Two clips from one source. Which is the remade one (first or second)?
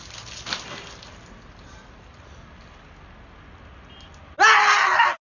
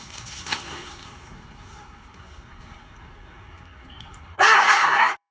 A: second